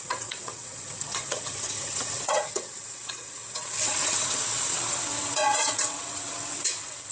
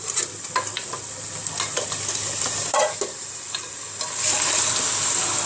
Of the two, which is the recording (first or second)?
second